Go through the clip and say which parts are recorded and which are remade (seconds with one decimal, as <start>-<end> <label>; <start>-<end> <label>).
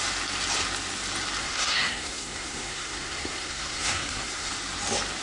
0.0-1.4 recorded; 1.4-4.5 remade; 4.5-5.2 recorded